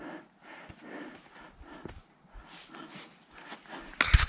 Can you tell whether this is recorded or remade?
recorded